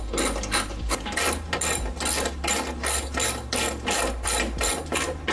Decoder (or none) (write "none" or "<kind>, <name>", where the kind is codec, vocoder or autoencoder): none